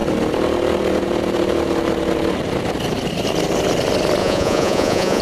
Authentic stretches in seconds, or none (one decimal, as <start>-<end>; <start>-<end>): 0.0-4.2